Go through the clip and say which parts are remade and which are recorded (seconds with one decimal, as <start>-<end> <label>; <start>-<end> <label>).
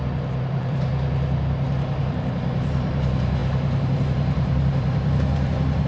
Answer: 0.0-0.9 remade; 0.9-2.0 recorded; 2.0-5.9 remade